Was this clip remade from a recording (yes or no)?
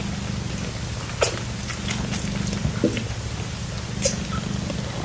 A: no